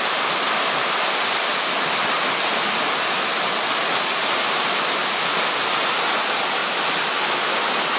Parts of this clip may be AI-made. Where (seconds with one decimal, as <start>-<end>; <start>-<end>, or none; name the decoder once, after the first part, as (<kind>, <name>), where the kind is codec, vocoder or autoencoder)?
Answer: none